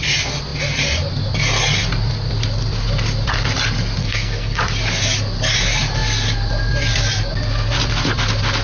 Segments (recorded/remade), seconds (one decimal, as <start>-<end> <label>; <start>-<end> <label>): 0.0-4.0 recorded; 4.0-4.6 remade; 4.6-8.6 recorded